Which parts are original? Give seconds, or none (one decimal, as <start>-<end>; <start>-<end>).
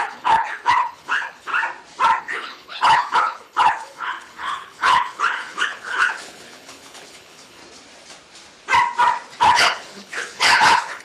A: 1.5-2.2; 7.6-9.4